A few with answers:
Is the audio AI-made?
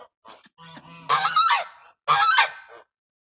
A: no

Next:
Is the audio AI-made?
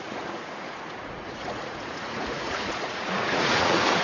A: yes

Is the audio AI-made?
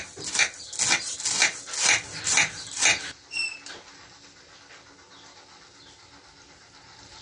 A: no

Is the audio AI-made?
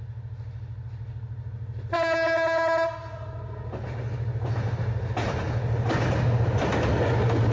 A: no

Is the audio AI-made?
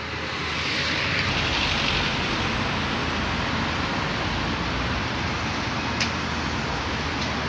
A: no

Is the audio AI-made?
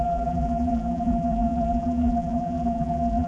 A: yes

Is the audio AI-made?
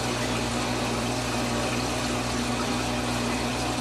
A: no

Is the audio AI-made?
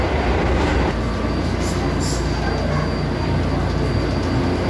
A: no